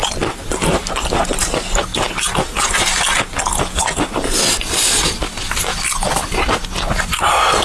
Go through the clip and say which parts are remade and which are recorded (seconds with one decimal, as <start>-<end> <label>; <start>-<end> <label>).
0.0-7.6 recorded

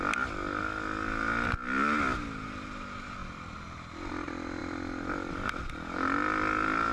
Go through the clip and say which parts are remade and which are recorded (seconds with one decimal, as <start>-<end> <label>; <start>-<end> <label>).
0.0-3.2 recorded; 3.2-4.1 remade; 4.1-4.6 recorded; 4.6-5.3 remade; 5.3-6.9 recorded

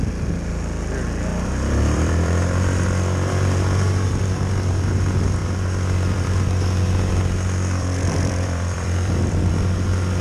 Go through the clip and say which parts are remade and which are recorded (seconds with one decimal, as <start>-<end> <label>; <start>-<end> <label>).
0.0-1.3 recorded; 1.3-4.9 remade; 4.9-5.4 recorded; 5.4-9.5 remade; 9.5-10.2 recorded

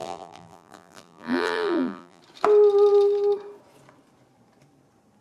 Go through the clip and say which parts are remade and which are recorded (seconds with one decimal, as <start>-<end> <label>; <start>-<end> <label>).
0.0-2.2 remade; 2.2-5.2 recorded

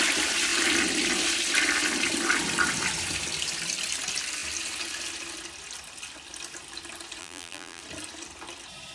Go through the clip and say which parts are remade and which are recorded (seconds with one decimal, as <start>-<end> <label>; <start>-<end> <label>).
0.0-7.2 recorded; 7.2-7.8 remade; 7.8-8.9 recorded

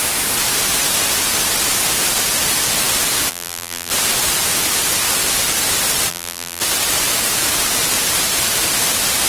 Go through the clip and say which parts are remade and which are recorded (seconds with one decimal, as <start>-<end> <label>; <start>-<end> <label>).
0.0-3.3 recorded; 3.3-3.9 remade; 3.9-6.1 recorded; 6.1-6.6 remade; 6.6-9.3 recorded

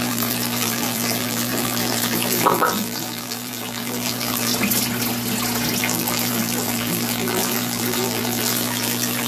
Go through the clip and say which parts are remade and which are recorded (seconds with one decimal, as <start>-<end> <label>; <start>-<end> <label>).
0.0-4.5 remade; 4.5-5.8 recorded; 5.8-9.3 remade

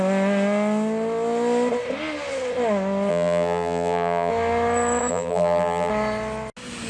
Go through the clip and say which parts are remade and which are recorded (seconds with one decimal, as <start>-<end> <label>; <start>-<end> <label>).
0.0-3.1 recorded; 3.1-4.3 remade; 4.3-5.1 recorded; 5.1-5.9 remade; 5.9-6.9 recorded